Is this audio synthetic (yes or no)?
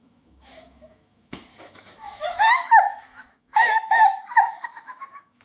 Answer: yes